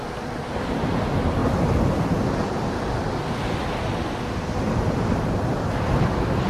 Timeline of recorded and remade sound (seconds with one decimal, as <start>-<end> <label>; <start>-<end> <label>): 0.0-1.4 remade; 1.4-1.9 recorded; 1.9-3.6 remade; 3.6-4.3 recorded; 4.3-6.5 remade